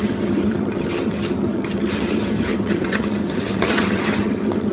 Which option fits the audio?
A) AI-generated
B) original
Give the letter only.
A